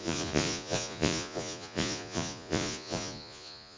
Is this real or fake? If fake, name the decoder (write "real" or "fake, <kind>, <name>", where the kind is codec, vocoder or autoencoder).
fake, vocoder, Vocos